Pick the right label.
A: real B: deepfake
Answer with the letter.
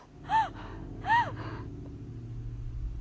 A